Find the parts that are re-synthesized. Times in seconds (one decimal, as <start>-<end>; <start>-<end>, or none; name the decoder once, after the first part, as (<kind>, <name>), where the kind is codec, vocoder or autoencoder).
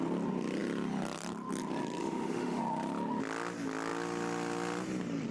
2.0-2.6 (autoencoder, DAC-VAE)